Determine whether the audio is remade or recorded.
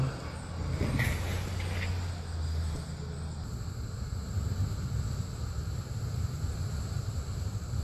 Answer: recorded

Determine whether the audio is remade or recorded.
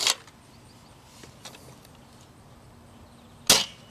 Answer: recorded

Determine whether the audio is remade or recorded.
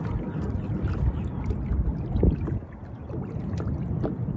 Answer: recorded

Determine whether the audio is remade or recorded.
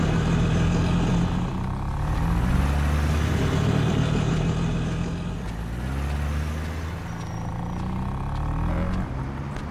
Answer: recorded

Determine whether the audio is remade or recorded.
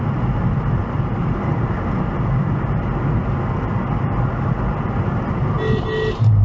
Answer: recorded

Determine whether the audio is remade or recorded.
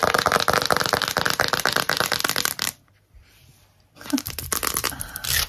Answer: remade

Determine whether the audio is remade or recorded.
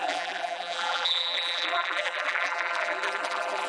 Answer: remade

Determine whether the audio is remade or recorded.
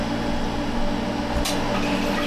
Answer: recorded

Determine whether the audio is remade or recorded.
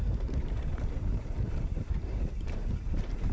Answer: remade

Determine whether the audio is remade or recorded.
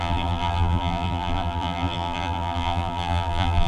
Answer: remade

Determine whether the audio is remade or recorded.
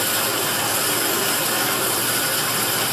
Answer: recorded